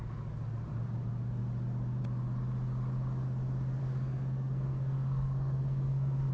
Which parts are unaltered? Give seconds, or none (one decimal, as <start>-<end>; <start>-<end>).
0.0-3.8